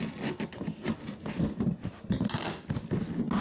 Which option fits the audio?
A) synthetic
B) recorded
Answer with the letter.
B